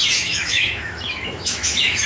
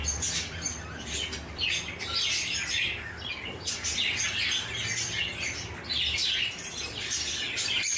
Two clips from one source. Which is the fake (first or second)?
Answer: first